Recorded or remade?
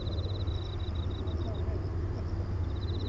recorded